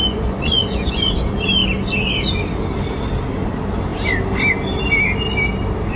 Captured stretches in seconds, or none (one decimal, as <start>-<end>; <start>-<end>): 1.1-6.0